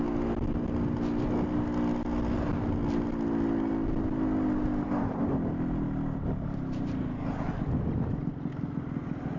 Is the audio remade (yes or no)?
no